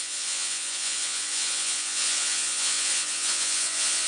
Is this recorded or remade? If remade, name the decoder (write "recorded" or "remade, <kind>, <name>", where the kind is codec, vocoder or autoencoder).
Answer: remade, vocoder, Vocos